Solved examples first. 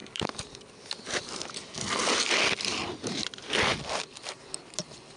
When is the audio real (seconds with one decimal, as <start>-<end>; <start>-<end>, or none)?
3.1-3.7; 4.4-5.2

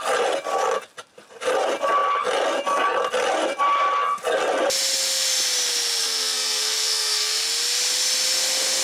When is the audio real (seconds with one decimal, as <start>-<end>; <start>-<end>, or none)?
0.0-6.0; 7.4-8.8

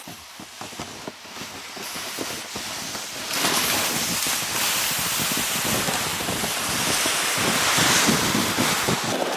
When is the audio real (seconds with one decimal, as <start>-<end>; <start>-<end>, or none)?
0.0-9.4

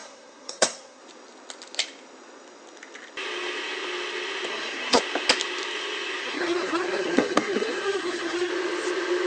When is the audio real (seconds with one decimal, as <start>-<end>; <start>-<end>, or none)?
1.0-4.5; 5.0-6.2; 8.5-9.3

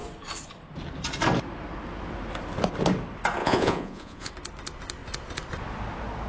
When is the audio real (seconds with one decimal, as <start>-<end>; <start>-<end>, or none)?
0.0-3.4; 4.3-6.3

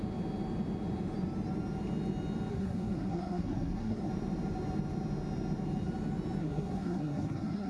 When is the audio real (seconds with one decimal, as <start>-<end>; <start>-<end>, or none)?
0.0-2.5; 4.1-6.4

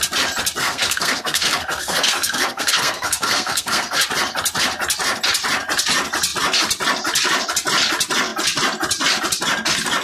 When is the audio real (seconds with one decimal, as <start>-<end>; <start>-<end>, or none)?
0.0-0.6; 4.0-10.0

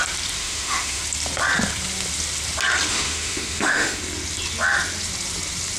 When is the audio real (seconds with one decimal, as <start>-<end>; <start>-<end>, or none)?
0.0-0.4; 1.0-2.9; 4.0-5.8